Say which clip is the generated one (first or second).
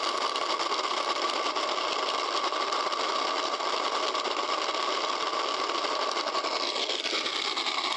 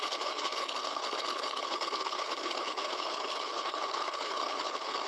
second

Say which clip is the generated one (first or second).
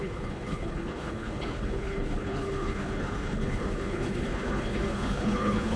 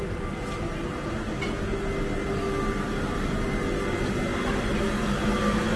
first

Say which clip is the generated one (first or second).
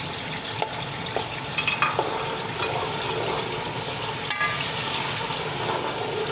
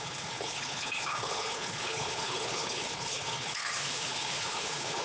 second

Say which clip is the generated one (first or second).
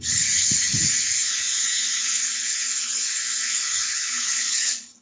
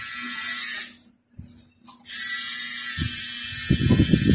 first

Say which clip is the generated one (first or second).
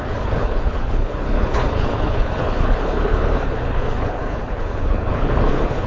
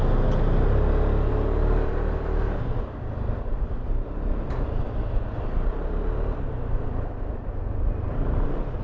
first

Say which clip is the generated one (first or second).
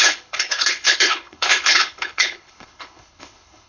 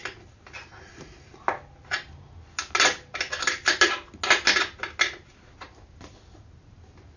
first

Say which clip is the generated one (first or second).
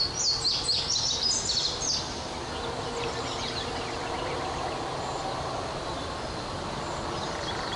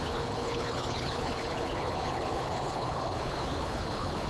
second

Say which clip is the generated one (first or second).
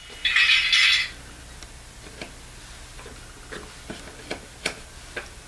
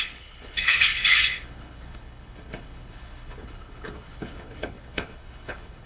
second